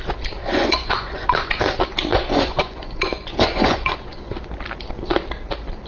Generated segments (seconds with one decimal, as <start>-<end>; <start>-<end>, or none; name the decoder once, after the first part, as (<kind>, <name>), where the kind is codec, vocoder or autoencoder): 0.4-1.5 (vocoder, Vocos); 2.1-4.5